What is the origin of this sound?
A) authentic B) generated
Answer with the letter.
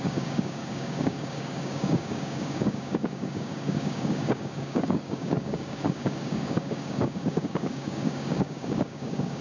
B